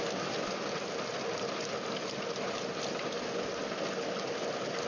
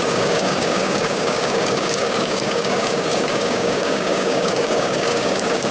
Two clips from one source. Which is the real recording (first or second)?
first